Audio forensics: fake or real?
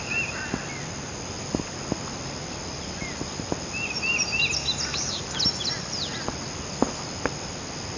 real